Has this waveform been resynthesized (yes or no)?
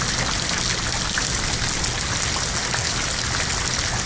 no